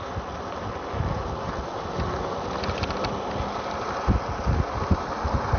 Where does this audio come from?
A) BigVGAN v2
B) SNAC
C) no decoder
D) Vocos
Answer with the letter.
C